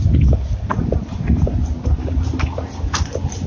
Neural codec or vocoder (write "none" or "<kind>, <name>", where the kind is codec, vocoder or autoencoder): none